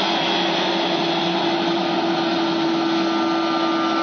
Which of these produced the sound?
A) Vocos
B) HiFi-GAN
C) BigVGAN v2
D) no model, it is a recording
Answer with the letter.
D